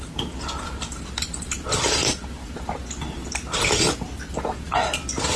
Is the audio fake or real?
real